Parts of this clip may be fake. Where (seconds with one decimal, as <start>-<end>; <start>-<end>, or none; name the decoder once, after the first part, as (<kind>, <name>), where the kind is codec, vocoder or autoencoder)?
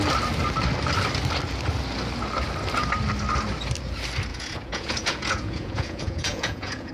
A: 4.3-6.9 (vocoder, Vocos)